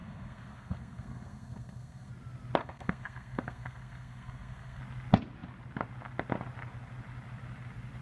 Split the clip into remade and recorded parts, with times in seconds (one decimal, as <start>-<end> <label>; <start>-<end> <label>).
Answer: 0.0-2.1 remade; 2.1-2.6 recorded; 2.6-4.8 remade; 4.8-8.0 recorded